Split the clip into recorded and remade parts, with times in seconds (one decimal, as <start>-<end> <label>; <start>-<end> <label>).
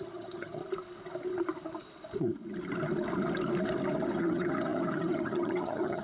0.0-0.6 remade; 0.6-4.2 recorded; 4.2-6.0 remade